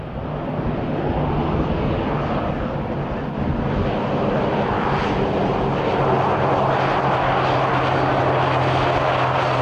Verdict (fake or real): real